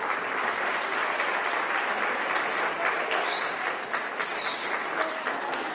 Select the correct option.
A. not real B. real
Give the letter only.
B